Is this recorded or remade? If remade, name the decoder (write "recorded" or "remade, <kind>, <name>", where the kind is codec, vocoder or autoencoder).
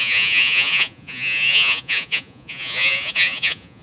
remade, vocoder, Vocos